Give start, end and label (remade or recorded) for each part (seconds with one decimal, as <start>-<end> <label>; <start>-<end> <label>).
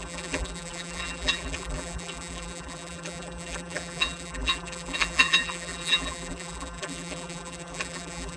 0.0-8.4 remade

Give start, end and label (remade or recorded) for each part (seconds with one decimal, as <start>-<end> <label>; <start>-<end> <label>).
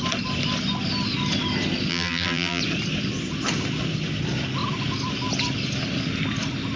0.0-1.9 recorded; 1.9-2.6 remade; 2.6-6.8 recorded